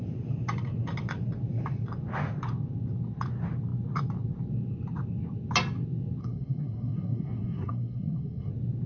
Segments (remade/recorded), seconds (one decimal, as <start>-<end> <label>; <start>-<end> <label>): 0.0-6.2 recorded; 6.2-8.5 remade; 8.5-8.9 recorded